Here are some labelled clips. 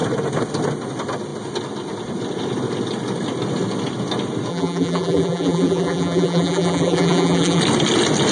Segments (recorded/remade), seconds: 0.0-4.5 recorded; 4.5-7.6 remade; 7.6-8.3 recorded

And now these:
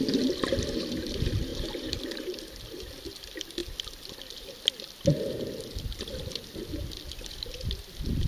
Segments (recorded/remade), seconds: 0.0-0.5 recorded; 0.5-1.0 remade; 1.0-1.5 recorded; 1.5-2.8 remade; 2.8-8.3 recorded